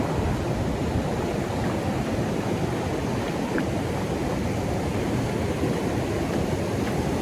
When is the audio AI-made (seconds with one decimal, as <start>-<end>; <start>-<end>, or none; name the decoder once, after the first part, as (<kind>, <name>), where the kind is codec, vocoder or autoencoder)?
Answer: none